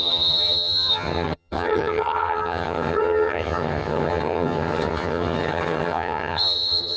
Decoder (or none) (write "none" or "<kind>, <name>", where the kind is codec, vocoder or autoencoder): vocoder, HiFi-GAN